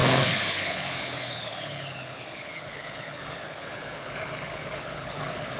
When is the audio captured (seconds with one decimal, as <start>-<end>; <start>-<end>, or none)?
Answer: none